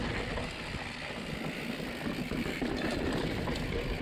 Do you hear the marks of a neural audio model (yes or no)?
no